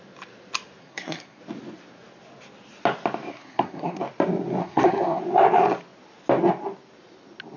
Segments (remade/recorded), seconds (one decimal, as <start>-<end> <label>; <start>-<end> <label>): 0.0-0.8 recorded; 0.8-1.4 remade; 1.4-3.3 recorded; 3.3-4.0 remade; 4.0-4.6 recorded; 4.6-5.2 remade; 5.2-7.6 recorded